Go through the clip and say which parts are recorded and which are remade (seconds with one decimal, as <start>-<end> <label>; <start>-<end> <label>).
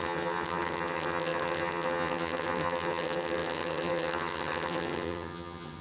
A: 0.0-5.8 remade